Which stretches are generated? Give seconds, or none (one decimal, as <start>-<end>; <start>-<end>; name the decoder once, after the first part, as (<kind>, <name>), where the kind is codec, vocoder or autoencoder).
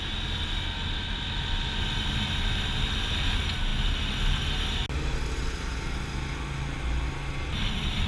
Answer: none